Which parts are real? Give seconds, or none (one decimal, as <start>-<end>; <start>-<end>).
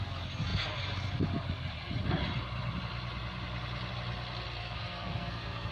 0.0-4.6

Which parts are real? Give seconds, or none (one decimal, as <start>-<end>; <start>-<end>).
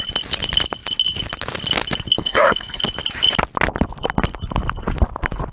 0.0-2.2; 2.8-5.5